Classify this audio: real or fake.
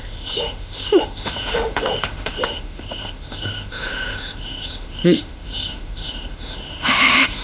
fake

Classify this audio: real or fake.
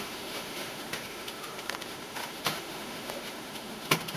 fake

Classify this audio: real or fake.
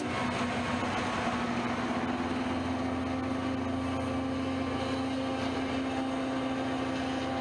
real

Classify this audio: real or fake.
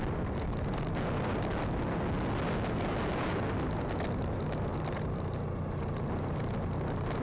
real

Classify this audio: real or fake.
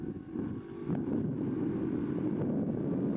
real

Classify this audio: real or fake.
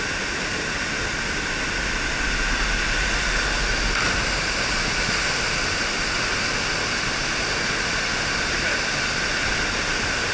real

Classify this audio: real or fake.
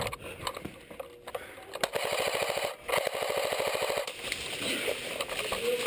real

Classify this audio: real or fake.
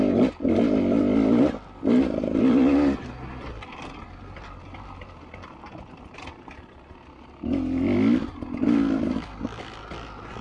real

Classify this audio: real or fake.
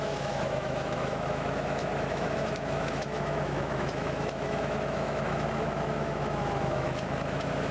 fake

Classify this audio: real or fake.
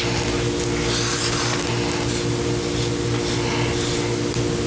real